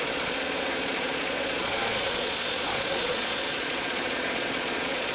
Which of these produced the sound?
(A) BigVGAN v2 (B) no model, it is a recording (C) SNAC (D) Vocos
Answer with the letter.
D